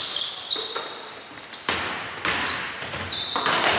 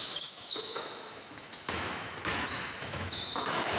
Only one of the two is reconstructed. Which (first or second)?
second